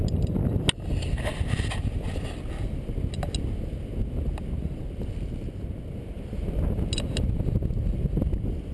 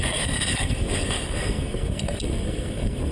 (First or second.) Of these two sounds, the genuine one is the first